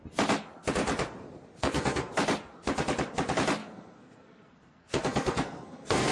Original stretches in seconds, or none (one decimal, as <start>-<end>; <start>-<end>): 0.0-1.6; 2.1-3.6